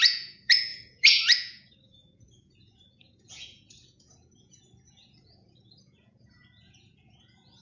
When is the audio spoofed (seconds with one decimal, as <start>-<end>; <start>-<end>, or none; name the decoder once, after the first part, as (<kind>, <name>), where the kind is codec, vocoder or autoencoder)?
0.0-7.6 (vocoder, Vocos)